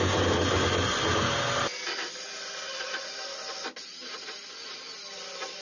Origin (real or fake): real